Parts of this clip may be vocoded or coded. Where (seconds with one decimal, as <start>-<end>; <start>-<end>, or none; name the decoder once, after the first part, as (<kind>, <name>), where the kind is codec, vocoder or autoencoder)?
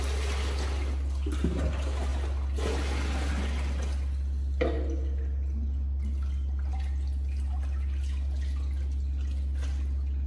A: none